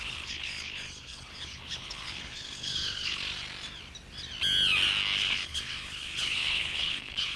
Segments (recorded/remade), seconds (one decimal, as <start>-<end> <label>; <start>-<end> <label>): 0.0-3.2 remade; 3.2-5.2 recorded; 5.2-7.4 remade